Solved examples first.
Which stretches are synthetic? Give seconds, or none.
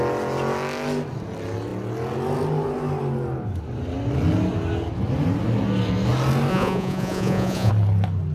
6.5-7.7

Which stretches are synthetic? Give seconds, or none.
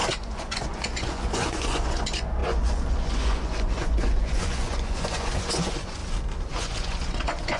0.0-6.0; 6.5-7.6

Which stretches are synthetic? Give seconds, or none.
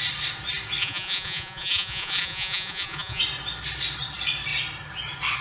0.8-3.2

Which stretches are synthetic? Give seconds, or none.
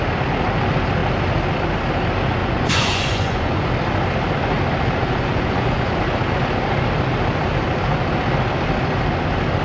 2.4-3.7; 5.0-6.0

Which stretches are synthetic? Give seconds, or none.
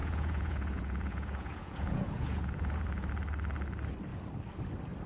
0.0-3.1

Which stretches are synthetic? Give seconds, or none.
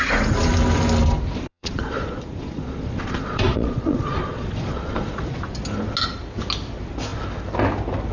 1.5-5.3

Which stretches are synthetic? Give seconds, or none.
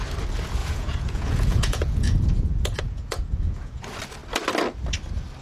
0.6-3.8